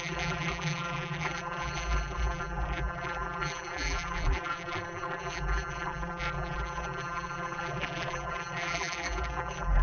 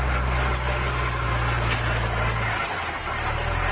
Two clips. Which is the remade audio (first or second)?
first